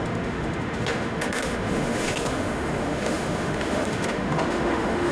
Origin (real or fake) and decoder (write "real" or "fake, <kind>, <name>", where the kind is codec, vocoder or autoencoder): fake, autoencoder, DAC-VAE